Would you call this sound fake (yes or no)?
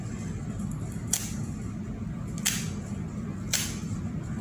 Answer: no